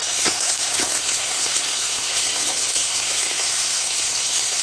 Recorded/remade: remade